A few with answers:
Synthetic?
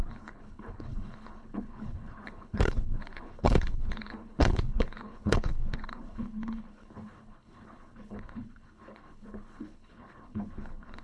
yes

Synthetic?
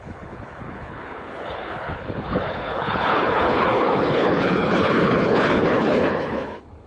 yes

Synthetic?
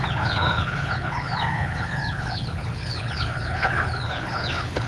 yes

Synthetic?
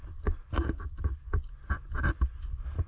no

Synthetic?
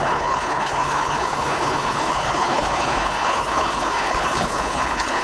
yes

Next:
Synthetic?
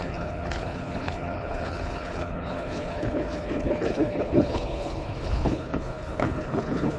yes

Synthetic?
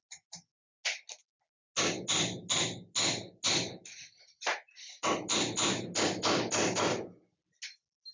no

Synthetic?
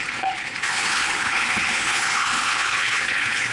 yes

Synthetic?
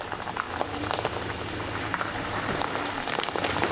no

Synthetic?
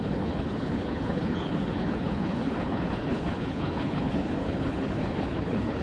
yes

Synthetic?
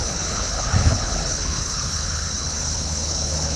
yes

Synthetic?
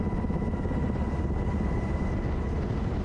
no